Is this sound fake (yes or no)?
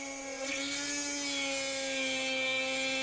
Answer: no